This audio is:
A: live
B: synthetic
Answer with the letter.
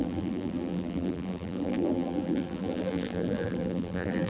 B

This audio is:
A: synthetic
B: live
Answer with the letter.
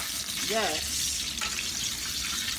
B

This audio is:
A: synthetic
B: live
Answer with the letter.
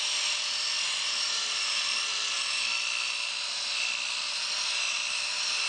A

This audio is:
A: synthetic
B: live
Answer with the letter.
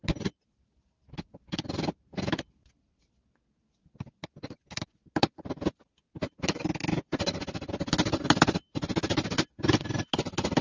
B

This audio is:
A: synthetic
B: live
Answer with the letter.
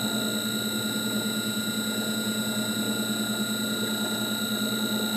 B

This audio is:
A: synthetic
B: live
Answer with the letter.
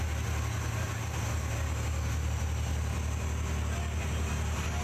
B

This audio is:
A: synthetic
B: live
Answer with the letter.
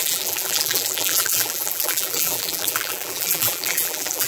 A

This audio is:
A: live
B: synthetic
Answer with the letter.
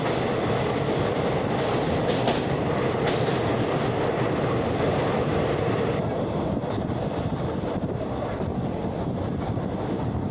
A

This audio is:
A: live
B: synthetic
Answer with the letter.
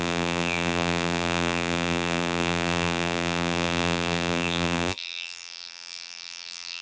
B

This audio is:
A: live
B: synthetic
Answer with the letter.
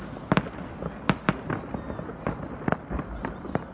A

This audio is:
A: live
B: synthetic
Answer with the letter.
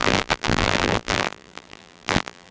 B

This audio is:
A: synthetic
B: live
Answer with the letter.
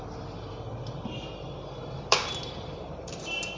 A